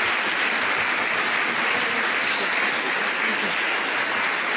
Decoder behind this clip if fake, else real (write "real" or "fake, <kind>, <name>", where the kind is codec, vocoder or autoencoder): real